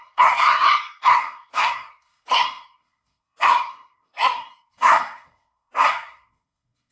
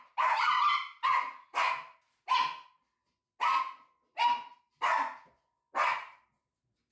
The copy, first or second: first